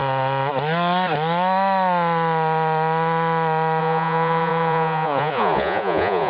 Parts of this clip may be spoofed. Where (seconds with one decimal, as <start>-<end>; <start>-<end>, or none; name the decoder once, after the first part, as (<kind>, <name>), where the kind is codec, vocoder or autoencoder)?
3.8-6.3 (vocoder, Vocos)